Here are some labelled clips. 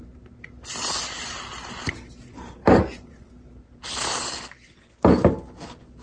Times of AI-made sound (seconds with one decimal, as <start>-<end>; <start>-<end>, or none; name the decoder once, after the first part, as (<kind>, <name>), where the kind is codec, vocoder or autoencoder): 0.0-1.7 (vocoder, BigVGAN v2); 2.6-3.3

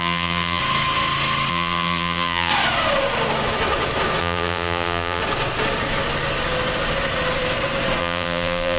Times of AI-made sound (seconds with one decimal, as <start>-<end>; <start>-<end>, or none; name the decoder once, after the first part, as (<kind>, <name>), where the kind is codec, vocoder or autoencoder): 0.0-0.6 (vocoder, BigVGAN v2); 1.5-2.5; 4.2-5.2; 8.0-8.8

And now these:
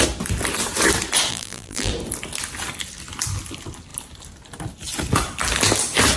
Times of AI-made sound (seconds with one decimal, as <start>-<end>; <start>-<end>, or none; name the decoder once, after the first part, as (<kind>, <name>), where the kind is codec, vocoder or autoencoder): 1.3-1.9 (vocoder, BigVGAN v2)

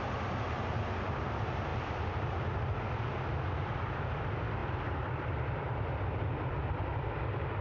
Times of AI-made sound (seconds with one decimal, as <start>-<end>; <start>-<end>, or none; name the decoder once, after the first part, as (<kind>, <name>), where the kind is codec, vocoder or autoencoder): 1.7-2.4 (vocoder, BigVGAN v2); 4.6-7.6

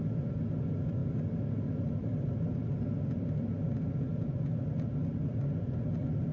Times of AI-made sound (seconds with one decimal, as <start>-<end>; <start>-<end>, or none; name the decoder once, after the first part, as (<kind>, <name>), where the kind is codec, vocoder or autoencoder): 3.5-4.6 (vocoder, BigVGAN v2)

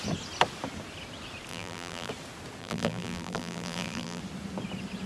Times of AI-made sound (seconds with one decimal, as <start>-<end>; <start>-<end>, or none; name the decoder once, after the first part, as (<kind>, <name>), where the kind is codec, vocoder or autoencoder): 1.5-2.1 (vocoder, BigVGAN v2); 2.6-4.2